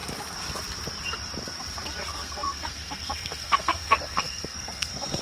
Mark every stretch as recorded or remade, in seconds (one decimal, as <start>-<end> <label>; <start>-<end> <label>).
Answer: 0.0-2.1 recorded; 2.1-5.2 remade